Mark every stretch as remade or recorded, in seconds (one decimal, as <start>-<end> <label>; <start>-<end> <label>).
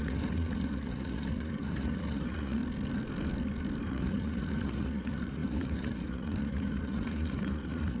0.0-2.6 remade; 2.6-3.9 recorded; 3.9-8.0 remade